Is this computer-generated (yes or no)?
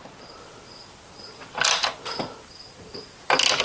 no